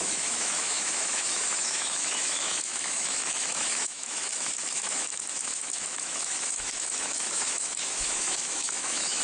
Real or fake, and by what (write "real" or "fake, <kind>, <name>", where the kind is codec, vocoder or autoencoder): fake, autoencoder, DAC-VAE